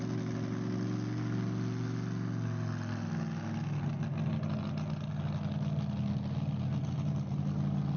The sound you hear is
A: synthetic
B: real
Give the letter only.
B